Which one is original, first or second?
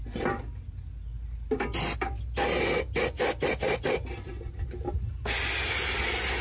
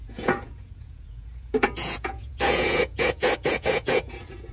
first